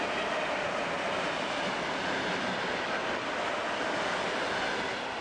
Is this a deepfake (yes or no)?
no